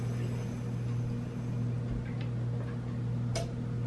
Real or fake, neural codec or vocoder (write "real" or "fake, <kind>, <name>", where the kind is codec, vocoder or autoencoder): real